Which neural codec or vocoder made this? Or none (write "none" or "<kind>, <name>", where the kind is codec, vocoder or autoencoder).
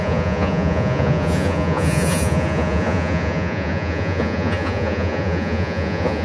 vocoder, Vocos